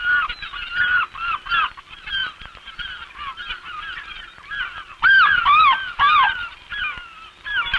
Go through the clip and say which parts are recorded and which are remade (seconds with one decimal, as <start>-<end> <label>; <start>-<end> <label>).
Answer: 0.0-7.8 remade